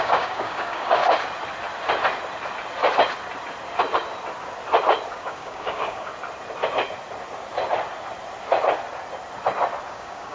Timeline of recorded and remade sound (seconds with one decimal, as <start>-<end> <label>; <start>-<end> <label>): 0.0-1.0 remade; 1.0-5.1 recorded; 5.1-6.1 remade; 6.1-9.9 recorded; 9.9-10.3 remade